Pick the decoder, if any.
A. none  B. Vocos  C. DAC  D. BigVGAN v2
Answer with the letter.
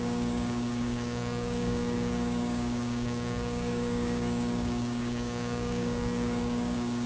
C